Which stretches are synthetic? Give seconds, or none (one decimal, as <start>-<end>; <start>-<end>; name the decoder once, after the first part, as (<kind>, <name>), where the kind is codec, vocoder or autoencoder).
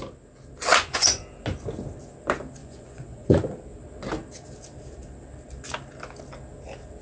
0.7-1.2 (vocoder, Vocos); 2.6-3.5